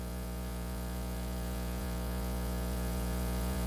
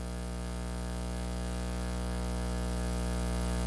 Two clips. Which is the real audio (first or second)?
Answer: second